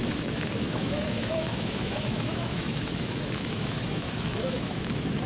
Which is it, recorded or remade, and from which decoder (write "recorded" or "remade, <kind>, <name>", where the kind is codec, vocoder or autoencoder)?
remade, autoencoder, DAC-VAE